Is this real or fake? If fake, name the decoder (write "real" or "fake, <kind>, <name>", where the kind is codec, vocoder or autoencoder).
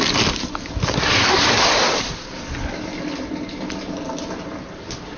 real